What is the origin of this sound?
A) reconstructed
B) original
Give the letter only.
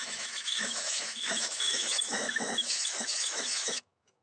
A